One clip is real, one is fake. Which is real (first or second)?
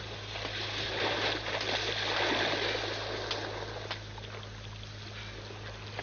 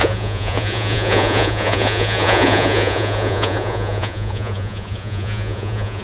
first